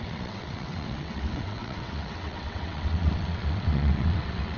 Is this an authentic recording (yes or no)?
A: no